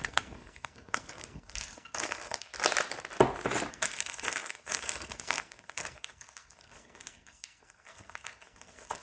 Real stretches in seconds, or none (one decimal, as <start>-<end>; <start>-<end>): 2.5-3.7